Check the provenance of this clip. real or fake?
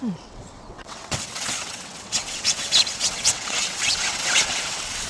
fake